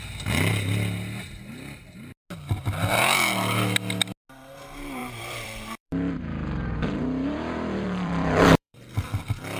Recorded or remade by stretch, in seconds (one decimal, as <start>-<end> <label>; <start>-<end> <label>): 0.0-5.0 recorded; 5.0-8.8 remade; 8.8-9.6 recorded